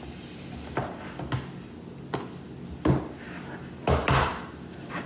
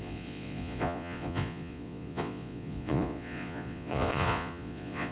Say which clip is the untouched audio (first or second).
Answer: first